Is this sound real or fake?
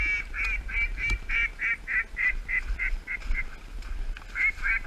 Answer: real